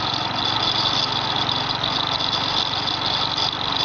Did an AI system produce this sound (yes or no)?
no